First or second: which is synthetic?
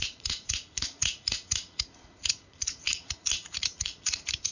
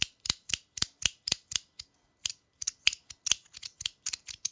first